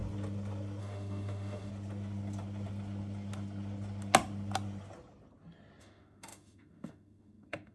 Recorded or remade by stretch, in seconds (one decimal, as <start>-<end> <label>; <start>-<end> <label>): 0.0-0.8 recorded; 0.8-1.7 remade; 1.7-5.8 recorded; 5.8-7.7 remade